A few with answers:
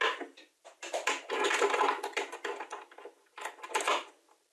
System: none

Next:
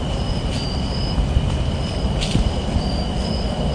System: none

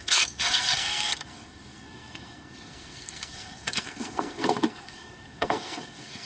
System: codec, SNAC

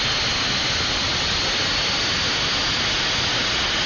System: none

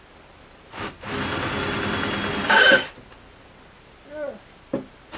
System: none